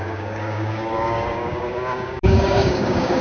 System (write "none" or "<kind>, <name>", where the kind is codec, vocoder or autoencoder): codec, DAC